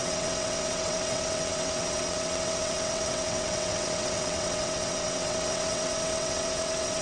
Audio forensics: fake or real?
fake